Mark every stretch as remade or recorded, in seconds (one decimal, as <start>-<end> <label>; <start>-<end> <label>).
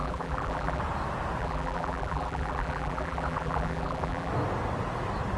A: 0.0-0.8 remade; 0.8-1.4 recorded; 1.4-4.3 remade; 4.3-5.4 recorded